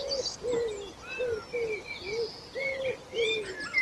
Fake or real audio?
real